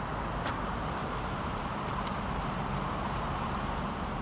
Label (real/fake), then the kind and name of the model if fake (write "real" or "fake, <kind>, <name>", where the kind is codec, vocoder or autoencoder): fake, vocoder, BigVGAN v2